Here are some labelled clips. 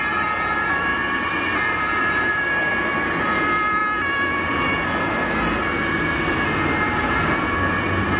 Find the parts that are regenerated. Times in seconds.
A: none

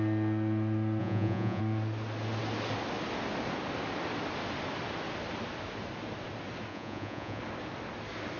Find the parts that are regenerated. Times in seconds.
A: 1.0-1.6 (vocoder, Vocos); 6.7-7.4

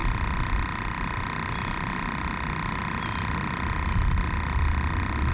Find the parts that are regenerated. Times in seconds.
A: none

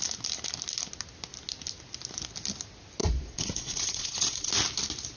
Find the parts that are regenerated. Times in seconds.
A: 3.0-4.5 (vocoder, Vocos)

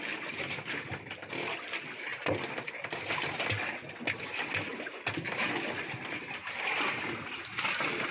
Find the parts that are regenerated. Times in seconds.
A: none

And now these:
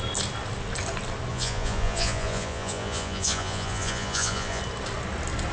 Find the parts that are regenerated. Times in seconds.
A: 1.3-4.6 (vocoder, Vocos)

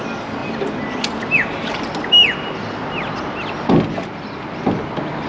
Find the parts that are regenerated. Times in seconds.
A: none

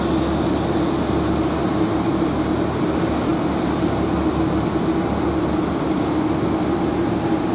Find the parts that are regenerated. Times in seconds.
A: none